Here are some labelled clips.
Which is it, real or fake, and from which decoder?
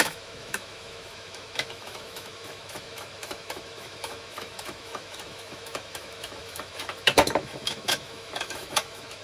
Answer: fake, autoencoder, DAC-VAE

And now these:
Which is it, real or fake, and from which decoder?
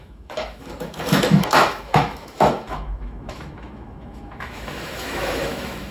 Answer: fake, autoencoder, DAC-VAE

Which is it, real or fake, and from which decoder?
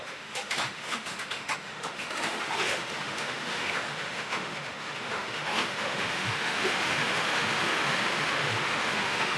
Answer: fake, autoencoder, DAC-VAE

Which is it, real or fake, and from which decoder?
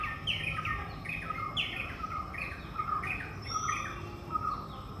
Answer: real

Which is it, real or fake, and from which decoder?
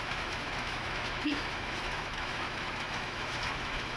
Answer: fake, autoencoder, DAC-VAE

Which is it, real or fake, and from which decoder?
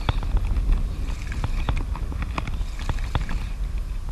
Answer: real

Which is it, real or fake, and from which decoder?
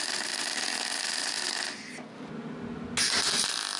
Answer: real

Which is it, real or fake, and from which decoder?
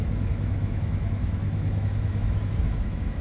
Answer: fake, autoencoder, DAC-VAE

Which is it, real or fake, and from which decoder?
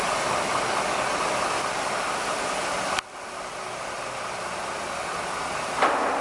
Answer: real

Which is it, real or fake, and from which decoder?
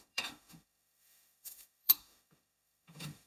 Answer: fake, autoencoder, DAC-VAE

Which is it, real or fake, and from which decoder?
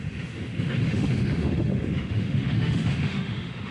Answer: fake, autoencoder, DAC-VAE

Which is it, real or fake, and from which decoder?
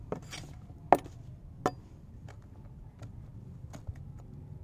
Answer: real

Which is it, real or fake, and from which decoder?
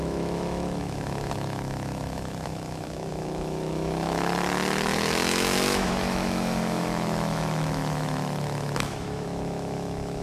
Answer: fake, autoencoder, DAC-VAE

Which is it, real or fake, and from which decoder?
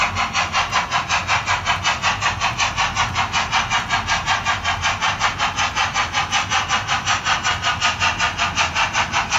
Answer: real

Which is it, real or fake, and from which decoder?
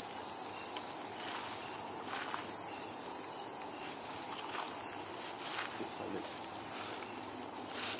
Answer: real